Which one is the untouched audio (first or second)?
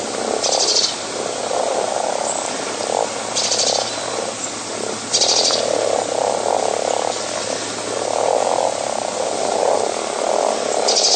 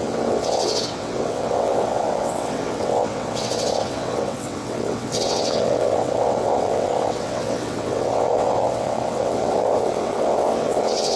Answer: first